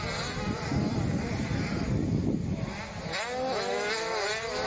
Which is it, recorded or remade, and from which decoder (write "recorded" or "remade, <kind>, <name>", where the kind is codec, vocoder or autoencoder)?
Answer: recorded